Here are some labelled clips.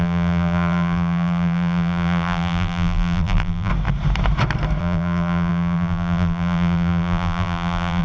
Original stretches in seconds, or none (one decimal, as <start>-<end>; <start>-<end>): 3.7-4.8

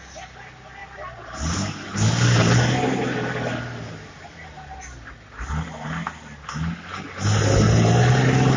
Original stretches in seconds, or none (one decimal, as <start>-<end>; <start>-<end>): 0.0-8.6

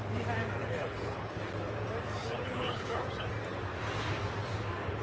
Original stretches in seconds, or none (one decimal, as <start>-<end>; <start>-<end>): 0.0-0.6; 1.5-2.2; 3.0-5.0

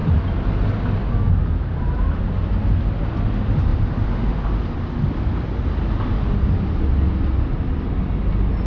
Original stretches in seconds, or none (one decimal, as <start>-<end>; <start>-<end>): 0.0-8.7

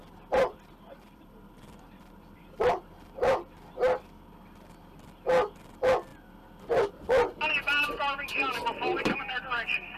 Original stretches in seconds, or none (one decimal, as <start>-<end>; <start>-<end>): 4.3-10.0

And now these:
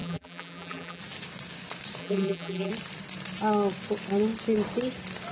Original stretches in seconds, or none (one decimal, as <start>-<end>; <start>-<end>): 1.0-2.0; 2.7-5.3

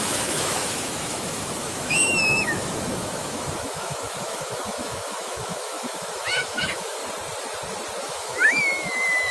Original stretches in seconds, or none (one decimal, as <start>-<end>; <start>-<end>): 7.0-8.0

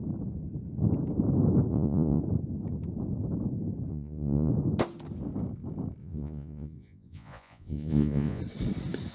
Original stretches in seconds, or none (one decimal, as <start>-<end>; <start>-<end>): 0.0-1.7; 2.2-3.9; 4.5-6.0; 8.4-9.1